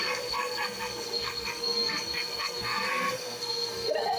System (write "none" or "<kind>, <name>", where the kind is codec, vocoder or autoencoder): codec, SNAC